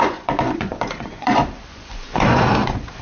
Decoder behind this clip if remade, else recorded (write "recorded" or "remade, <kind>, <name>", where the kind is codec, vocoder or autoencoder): remade, vocoder, Vocos